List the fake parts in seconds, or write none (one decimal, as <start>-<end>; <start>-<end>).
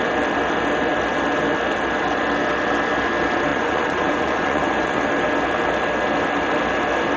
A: 3.5-5.0